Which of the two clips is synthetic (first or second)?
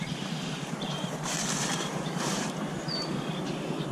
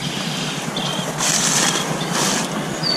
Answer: first